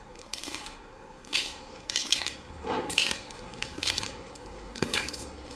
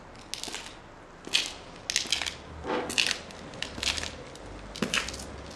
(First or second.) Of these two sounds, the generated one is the first